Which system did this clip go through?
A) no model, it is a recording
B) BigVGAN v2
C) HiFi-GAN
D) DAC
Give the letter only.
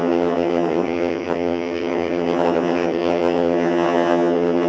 C